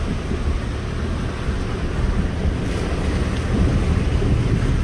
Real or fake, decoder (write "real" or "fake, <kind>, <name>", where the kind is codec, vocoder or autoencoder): real